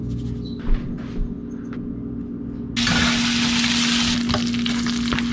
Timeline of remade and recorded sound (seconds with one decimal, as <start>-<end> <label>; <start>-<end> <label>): 0.0-5.3 recorded